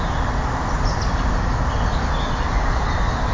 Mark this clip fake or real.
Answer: real